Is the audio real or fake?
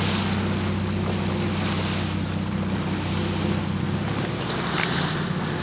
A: real